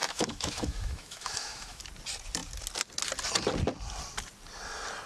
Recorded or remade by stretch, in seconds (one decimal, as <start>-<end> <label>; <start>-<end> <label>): 0.0-1.8 remade; 1.8-5.1 recorded